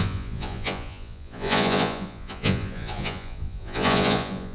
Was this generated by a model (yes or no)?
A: yes